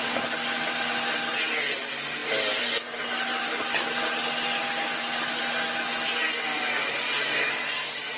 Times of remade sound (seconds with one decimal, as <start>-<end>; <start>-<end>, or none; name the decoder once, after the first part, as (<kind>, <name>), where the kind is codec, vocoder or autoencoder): none